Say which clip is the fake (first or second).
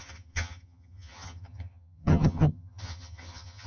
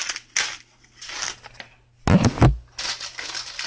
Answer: first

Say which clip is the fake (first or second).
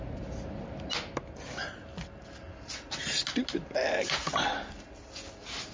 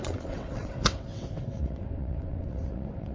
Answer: second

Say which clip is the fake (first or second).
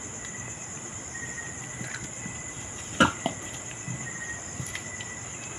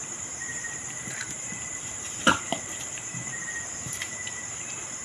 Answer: second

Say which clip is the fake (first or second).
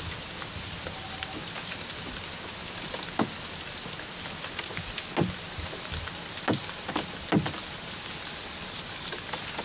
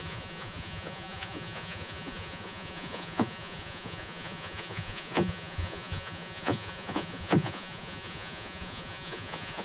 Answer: second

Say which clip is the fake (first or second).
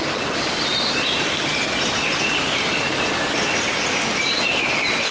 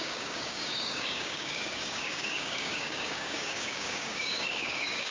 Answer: second